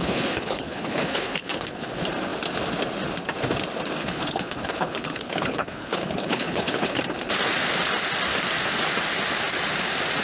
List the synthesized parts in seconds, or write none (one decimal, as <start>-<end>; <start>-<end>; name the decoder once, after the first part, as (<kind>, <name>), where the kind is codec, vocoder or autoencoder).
0.0-1.9 (codec, HILCodec); 4.0-7.0